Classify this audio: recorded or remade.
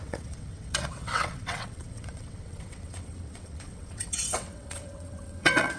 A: remade